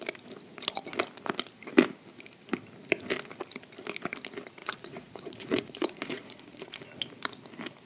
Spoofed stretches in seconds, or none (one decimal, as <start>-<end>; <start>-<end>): 4.6-6.8